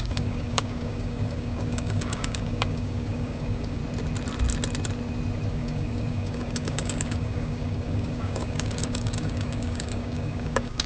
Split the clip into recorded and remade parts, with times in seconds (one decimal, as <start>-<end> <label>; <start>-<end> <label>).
0.0-3.8 remade; 3.8-5.5 recorded; 5.5-10.9 remade